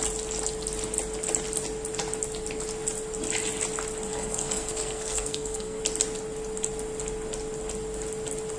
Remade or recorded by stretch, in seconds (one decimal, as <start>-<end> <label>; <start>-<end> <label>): 0.0-4.1 recorded; 4.1-5.8 remade; 5.8-8.6 recorded

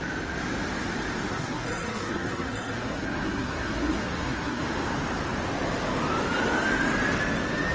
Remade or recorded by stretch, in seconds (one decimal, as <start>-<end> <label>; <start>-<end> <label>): 0.0-1.3 recorded; 1.3-4.6 remade; 4.6-7.7 recorded